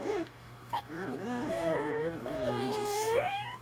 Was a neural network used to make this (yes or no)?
yes